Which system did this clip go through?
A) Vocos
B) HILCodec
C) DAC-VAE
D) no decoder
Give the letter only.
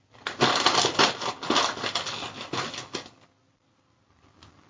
D